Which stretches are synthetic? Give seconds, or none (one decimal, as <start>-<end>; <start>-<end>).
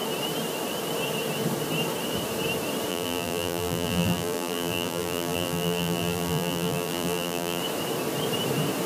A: 2.9-7.6